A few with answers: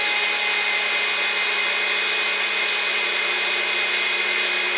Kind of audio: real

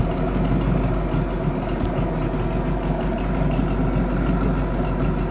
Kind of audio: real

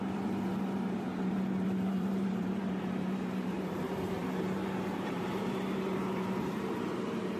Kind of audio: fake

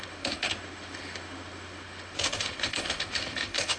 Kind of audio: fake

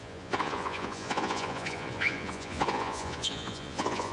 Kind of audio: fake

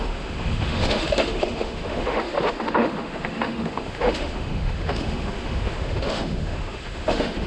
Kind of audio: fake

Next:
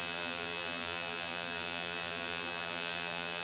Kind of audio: fake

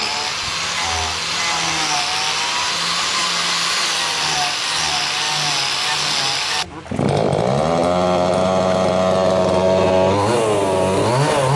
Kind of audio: real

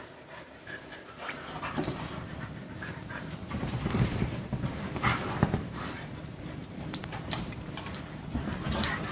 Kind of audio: fake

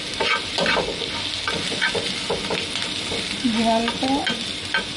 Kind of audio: real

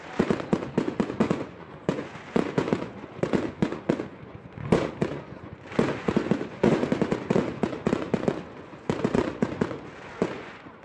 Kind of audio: fake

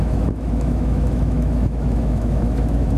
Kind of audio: fake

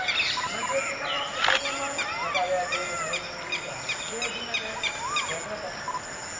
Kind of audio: real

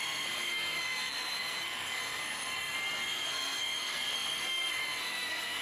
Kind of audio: fake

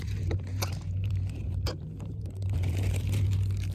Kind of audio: fake